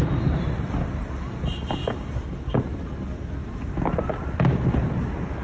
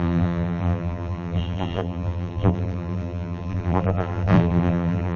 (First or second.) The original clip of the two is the first